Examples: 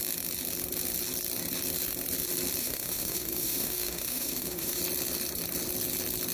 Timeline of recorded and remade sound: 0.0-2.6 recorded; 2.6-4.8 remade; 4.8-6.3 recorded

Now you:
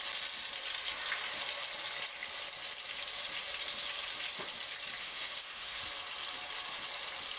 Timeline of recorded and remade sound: 0.0-5.0 recorded; 5.0-5.8 remade; 5.8-7.4 recorded

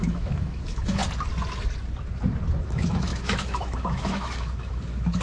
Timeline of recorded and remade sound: 0.0-1.0 remade; 1.0-2.6 recorded; 2.6-5.2 remade

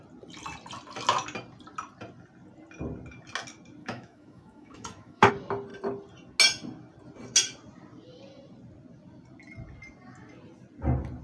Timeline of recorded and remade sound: 0.0-3.8 recorded; 3.8-5.3 remade; 5.3-11.2 recorded